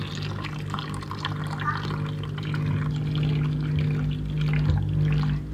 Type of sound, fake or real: real